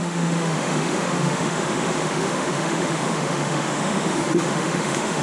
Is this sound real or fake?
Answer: fake